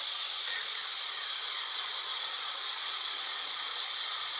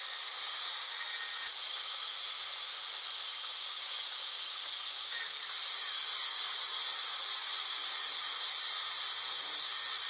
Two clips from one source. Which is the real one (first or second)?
second